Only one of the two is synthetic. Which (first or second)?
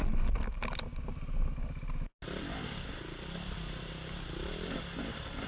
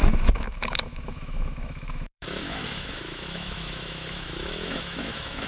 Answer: second